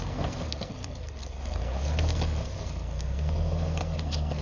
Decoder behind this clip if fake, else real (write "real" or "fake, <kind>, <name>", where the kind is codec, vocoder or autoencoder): fake, codec, SNAC